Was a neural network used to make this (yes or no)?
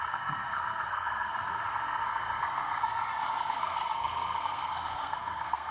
yes